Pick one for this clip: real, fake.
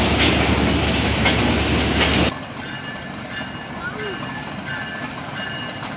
real